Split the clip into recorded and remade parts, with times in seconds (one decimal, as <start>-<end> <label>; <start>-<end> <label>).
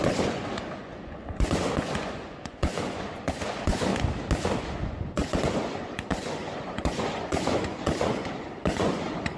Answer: 0.0-3.9 remade; 3.9-4.6 recorded; 4.6-9.4 remade